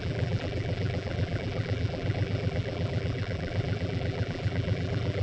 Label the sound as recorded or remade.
remade